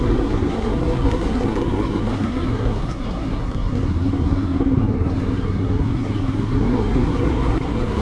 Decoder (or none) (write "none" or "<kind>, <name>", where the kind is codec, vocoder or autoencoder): codec, SNAC